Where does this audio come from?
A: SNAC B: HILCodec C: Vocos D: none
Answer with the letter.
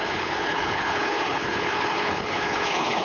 B